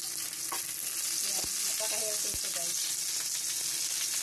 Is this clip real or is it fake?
real